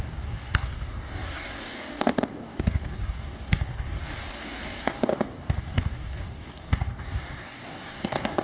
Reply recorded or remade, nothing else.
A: remade